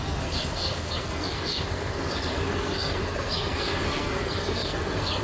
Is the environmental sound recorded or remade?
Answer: remade